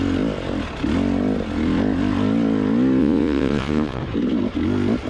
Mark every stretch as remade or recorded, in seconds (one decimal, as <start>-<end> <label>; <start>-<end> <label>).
0.0-3.0 recorded; 3.0-4.0 remade; 4.0-5.1 recorded